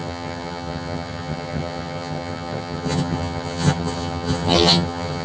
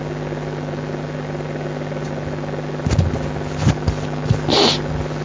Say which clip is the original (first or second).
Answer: second